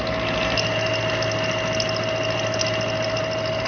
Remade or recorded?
recorded